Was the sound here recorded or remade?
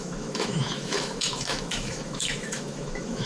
remade